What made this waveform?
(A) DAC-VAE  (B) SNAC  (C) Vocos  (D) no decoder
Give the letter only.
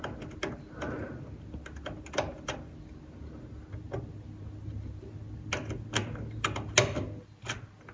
D